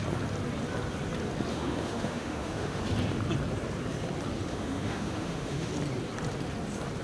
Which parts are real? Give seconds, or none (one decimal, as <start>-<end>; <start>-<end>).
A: 0.0-1.5; 2.8-4.5; 5.7-7.0